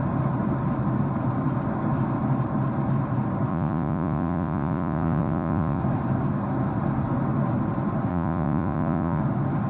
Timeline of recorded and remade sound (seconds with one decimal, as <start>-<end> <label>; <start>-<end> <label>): 0.0-3.5 recorded; 3.5-5.8 remade; 5.8-8.1 recorded; 8.1-9.2 remade; 9.2-9.7 recorded